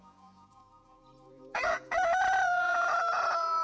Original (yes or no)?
no